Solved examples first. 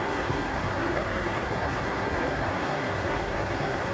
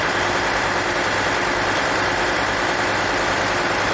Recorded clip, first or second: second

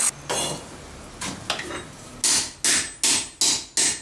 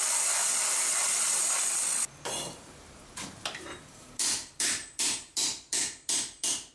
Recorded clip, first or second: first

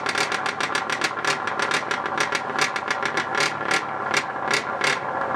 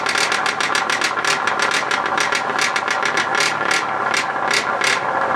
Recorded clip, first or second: first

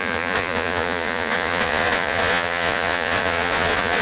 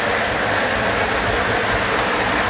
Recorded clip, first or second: second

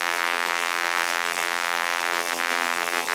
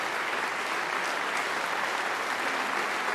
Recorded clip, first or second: second